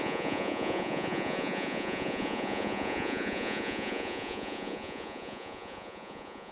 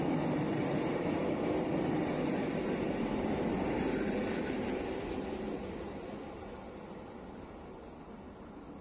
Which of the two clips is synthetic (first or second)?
first